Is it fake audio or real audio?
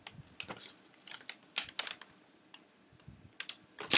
real